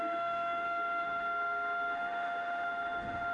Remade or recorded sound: remade